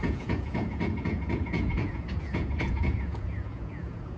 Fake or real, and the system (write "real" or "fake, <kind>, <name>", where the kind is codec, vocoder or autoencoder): fake, vocoder, Vocos